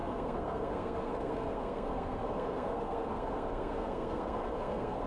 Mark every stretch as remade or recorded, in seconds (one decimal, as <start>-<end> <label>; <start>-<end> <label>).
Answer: 0.0-5.1 remade